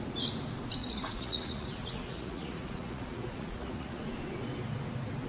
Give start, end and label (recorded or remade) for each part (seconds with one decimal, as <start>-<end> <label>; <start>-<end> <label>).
0.0-0.8 recorded; 0.8-4.0 remade; 4.0-5.3 recorded